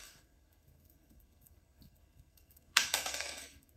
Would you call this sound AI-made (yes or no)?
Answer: yes